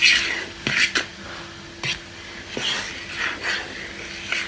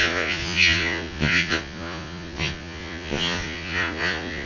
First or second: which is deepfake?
second